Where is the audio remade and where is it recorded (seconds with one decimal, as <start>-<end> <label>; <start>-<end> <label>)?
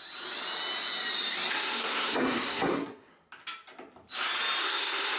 0.0-1.5 recorded; 1.5-3.1 remade; 3.1-4.6 recorded; 4.6-5.2 remade